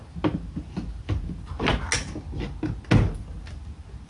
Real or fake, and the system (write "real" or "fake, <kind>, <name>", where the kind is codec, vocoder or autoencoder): real